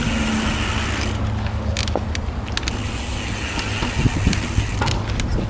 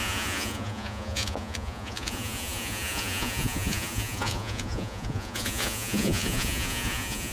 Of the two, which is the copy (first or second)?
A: second